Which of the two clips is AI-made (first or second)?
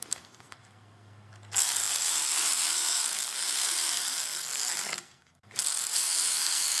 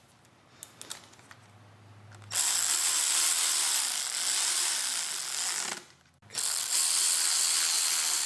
first